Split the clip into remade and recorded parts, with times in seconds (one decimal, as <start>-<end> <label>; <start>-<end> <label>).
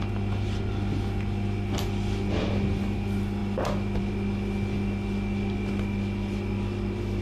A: 0.0-7.2 recorded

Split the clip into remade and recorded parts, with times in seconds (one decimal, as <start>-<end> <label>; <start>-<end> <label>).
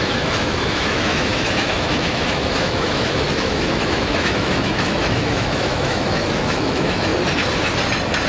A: 0.0-7.1 remade; 7.1-8.3 recorded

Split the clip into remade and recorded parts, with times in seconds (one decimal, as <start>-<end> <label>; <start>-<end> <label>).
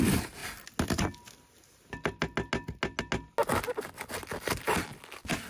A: 0.0-5.5 recorded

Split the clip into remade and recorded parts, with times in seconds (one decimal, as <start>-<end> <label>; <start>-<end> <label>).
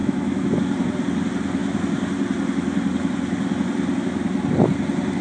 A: 0.0-0.5 remade; 0.5-5.2 recorded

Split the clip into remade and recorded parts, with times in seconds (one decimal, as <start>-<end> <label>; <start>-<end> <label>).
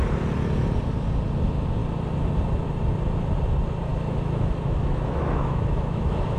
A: 0.0-3.9 recorded; 3.9-6.4 remade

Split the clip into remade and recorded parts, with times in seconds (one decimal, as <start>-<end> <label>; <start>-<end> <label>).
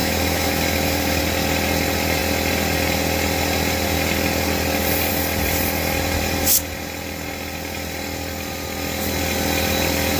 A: 0.0-1.2 remade; 1.2-10.2 recorded